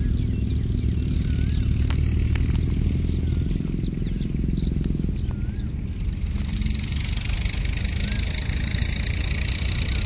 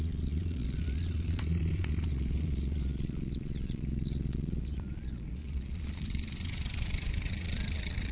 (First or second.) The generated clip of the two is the second